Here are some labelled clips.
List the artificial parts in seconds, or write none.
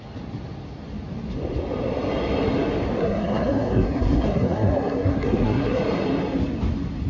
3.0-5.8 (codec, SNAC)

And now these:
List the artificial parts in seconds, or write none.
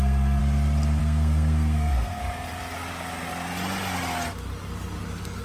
0.0-0.4 (codec, SNAC); 1.0-2.2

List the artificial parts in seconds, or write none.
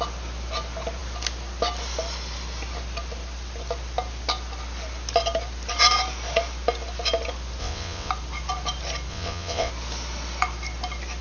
7.6-8.1 (vocoder, WaveNeXt); 9.1-9.7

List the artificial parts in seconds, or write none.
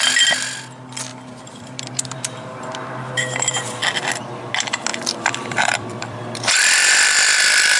1.1-2.6 (vocoder, BigVGAN v2); 3.8-4.5; 4.9-7.8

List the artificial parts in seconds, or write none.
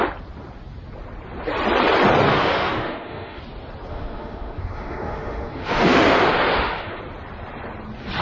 2.3-3.4 (autoencoder, DAC-VAE); 3.9-7.0